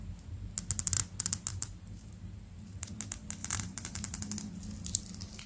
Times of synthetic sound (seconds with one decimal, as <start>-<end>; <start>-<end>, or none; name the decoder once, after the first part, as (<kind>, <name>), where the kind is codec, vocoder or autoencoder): 1.5-2.9 (vocoder, BigVGAN v2); 3.4-4.2